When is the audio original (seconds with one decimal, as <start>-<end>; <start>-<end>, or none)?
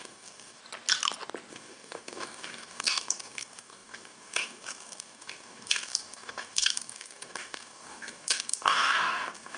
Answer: 0.6-1.5